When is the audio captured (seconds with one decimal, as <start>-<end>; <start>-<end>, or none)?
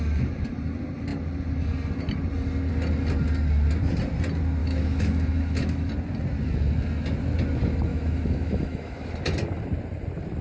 0.0-4.6; 5.9-7.9; 9.1-10.4